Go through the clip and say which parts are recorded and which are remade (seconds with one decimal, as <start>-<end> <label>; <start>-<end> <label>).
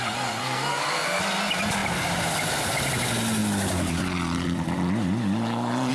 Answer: 0.0-0.4 recorded; 0.4-1.2 remade; 1.2-5.9 recorded